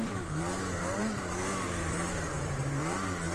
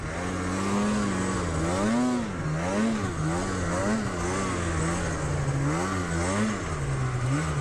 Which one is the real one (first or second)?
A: second